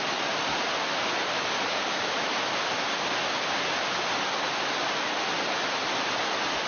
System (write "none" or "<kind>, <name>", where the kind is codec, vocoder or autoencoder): none